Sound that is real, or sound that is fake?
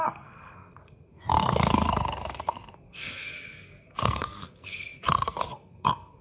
fake